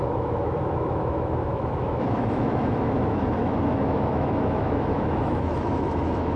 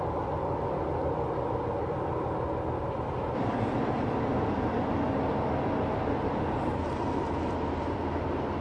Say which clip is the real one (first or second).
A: second